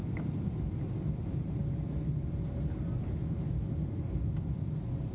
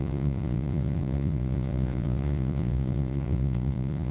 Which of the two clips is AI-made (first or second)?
second